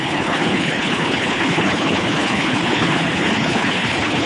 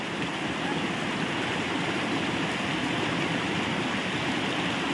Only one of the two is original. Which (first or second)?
second